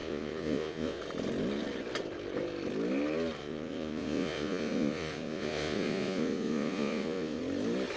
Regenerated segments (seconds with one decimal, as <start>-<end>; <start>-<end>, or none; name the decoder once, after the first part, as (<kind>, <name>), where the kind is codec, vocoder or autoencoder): 0.0-1.0 (vocoder, Vocos); 3.4-7.4